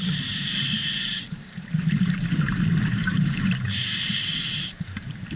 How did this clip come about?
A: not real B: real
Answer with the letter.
A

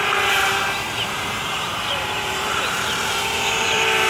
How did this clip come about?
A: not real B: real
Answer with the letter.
A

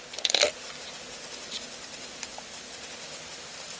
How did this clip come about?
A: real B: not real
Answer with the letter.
A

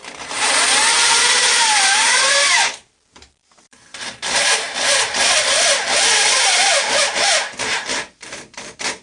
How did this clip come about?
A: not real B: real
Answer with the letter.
A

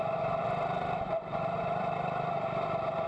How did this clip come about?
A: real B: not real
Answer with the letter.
B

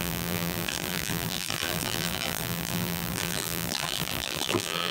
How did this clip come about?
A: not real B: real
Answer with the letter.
A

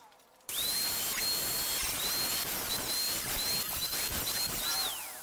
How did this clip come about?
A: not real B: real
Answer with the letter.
A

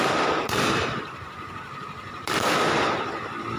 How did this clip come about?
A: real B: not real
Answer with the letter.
B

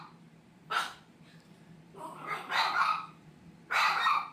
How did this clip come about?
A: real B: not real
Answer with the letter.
B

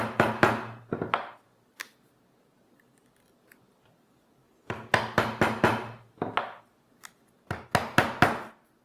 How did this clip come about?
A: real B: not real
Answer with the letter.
A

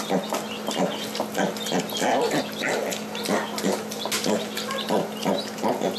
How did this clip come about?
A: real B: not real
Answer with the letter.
A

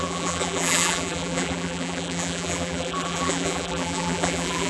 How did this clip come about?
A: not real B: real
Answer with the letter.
A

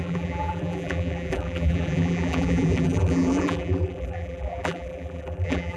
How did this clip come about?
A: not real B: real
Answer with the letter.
A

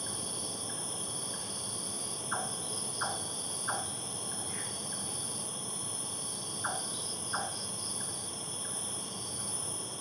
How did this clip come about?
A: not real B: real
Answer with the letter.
B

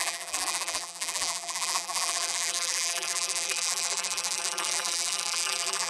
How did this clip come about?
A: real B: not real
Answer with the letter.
B